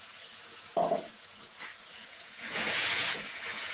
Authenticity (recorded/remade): remade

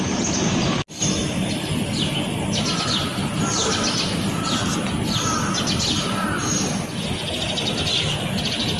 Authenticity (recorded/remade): recorded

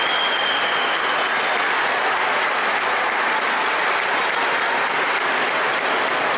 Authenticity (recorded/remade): recorded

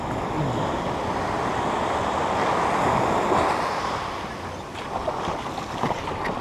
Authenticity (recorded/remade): recorded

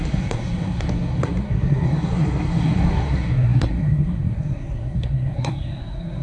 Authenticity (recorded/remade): remade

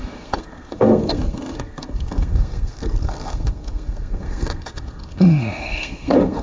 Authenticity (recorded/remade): remade